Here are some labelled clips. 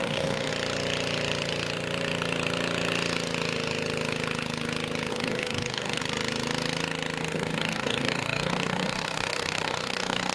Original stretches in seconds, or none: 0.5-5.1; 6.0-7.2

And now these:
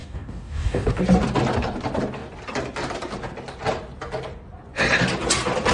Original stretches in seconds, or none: 1.0-5.7

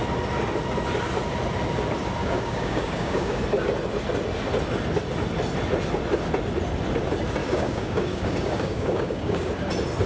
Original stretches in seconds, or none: 0.0-2.2; 3.4-7.4; 9.5-10.1

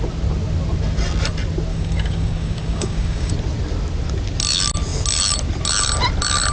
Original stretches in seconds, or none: 0.0-1.7; 3.3-6.5

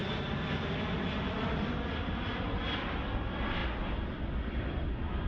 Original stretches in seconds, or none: 0.0-5.3

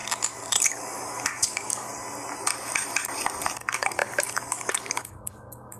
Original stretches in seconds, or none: 0.0-0.7; 1.9-3.6

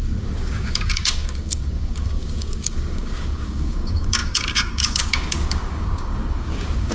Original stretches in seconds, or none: none